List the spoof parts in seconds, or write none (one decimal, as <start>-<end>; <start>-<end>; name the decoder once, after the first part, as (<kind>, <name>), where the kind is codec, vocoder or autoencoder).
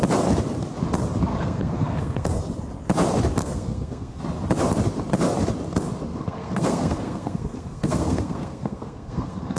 1.3-2.4 (codec, SNAC); 3.4-4.2; 6.1-9.6